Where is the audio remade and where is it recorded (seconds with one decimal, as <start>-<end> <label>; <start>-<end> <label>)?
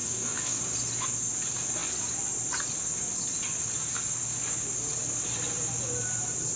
0.0-0.6 remade; 0.6-6.6 recorded